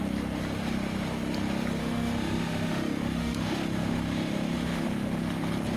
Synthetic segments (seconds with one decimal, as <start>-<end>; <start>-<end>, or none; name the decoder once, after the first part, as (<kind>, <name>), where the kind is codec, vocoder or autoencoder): 1.8-5.3 (autoencoder, DAC-VAE)